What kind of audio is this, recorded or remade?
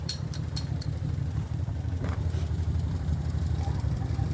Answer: remade